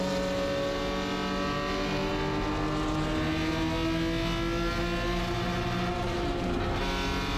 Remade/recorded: recorded